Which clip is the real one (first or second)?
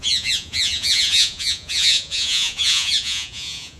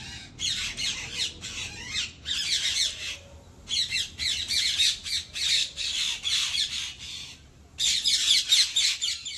second